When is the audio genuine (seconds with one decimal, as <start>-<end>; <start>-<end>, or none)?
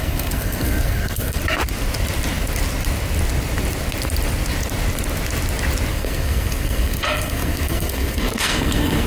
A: 1.4-5.9